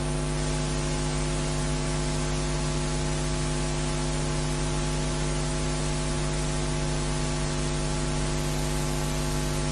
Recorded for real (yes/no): yes